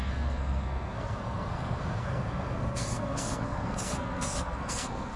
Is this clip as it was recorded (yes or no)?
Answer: no